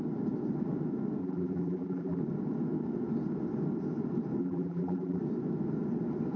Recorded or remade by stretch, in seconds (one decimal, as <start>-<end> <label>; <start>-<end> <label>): 0.0-1.2 recorded; 1.2-2.2 remade; 2.2-4.4 recorded; 4.4-5.2 remade; 5.2-6.4 recorded